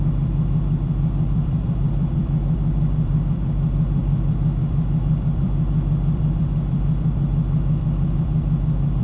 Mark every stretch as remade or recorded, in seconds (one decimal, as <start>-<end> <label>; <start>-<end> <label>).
0.0-9.0 remade